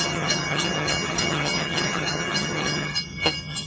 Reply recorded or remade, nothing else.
remade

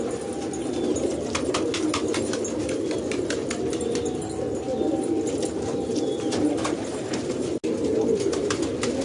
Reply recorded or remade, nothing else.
recorded